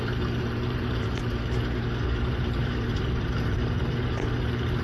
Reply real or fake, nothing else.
fake